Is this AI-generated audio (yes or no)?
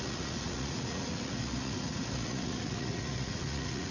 yes